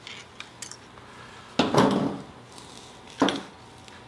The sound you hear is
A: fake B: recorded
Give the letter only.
B